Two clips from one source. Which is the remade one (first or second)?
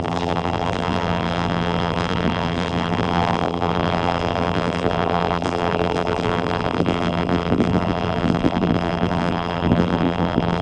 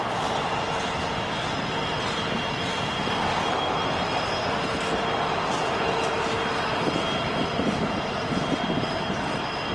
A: first